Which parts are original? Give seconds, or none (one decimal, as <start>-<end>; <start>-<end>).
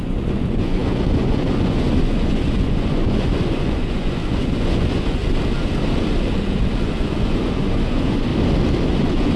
5.2-6.8; 8.3-9.0